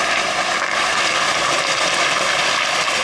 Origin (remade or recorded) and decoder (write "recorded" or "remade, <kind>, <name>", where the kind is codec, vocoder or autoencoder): recorded